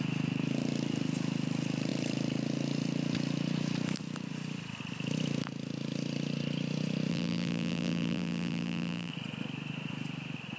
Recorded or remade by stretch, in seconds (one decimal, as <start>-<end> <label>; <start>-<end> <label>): 0.0-7.1 recorded; 7.1-9.1 remade; 9.1-10.6 recorded